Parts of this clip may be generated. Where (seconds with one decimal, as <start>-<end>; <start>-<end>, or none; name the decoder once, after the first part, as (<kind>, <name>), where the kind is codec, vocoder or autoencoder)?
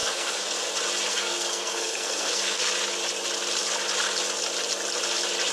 0.0-0.7 (codec, SNAC); 1.1-2.7